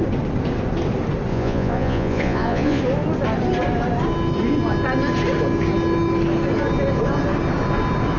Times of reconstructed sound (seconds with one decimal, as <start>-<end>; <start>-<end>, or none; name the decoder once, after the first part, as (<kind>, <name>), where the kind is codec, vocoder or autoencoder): 1.3-2.8 (vocoder, Vocos)